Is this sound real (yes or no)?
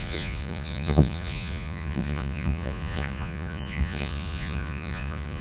no